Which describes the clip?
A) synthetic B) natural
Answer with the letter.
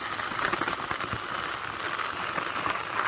B